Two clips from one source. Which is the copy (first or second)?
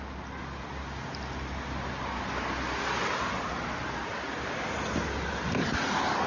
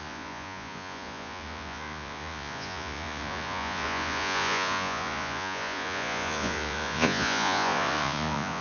second